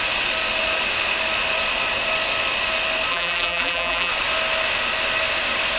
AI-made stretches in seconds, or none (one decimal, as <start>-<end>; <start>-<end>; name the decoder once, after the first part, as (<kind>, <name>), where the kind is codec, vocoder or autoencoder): 3.1-4.1 (vocoder, BigVGAN v2)